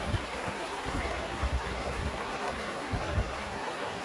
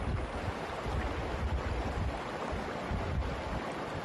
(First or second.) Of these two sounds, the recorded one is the second